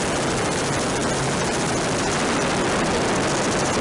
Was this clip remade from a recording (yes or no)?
no